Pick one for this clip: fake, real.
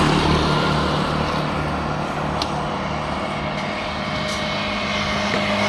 real